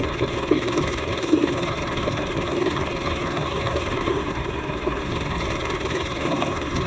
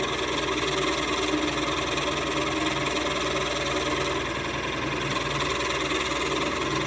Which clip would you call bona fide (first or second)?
second